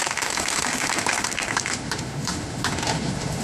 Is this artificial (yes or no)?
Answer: yes